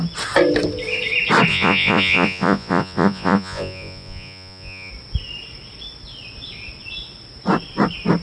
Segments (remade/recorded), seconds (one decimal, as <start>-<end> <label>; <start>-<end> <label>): 0.0-1.5 recorded; 1.5-4.9 remade; 4.9-8.2 recorded